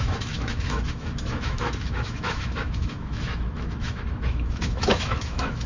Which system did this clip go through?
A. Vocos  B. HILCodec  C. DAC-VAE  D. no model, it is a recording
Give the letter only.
C